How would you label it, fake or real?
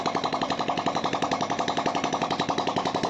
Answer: fake